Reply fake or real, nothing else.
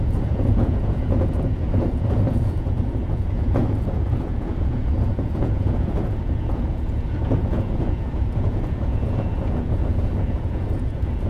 fake